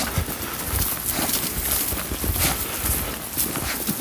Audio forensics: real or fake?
real